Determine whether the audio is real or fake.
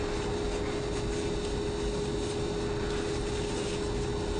real